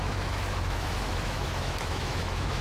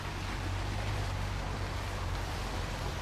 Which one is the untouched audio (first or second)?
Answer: second